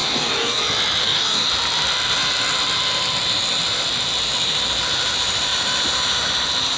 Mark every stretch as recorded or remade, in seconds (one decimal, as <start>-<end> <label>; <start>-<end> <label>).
0.0-0.6 remade; 0.6-1.0 recorded; 1.0-1.5 remade; 1.5-6.8 recorded

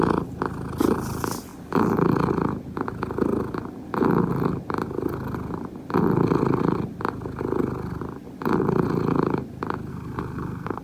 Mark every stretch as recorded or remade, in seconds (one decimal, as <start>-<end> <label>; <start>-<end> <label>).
0.0-9.9 recorded; 9.9-10.8 remade

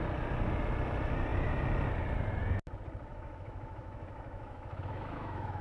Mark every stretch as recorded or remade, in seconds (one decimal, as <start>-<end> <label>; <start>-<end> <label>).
0.0-3.1 recorded; 3.1-5.6 remade